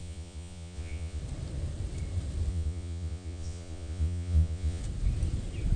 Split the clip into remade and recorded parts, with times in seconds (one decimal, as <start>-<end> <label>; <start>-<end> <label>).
0.0-1.2 remade; 1.2-2.5 recorded; 2.5-4.8 remade; 4.8-5.8 recorded